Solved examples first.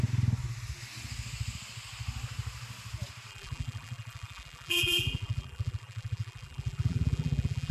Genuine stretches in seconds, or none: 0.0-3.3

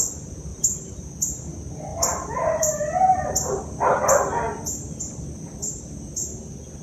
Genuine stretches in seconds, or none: 0.0-0.5; 1.5-1.9; 4.0-6.8

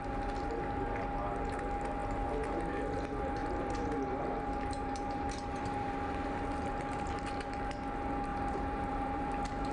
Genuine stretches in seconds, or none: 0.0-3.4; 7.3-8.3